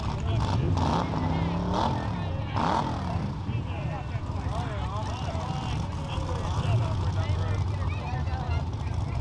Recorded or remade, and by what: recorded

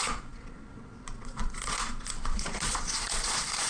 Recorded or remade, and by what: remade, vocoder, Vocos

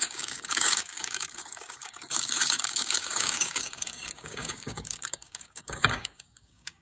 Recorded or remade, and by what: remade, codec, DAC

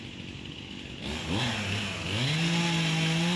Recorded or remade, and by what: recorded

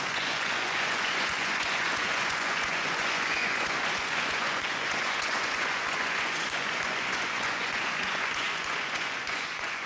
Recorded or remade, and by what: remade, vocoder, Vocos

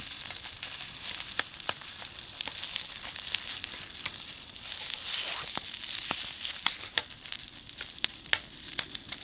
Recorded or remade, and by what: recorded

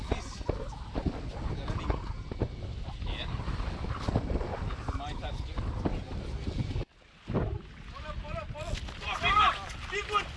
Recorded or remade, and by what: recorded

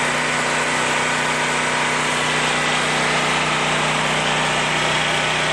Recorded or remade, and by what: recorded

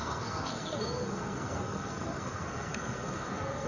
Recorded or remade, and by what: remade, codec, SNAC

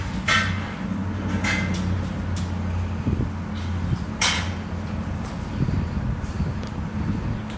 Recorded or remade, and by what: recorded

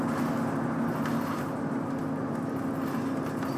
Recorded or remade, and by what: recorded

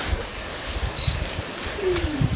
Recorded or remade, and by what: remade, codec, DAC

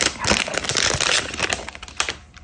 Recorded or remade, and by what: recorded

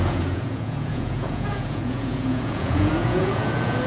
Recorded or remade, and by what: remade, vocoder, Vocos